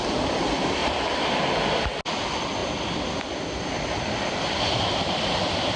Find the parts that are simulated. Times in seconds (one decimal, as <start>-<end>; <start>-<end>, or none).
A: none